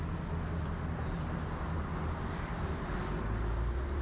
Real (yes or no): yes